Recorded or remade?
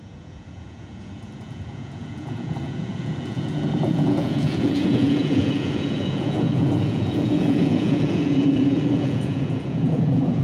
remade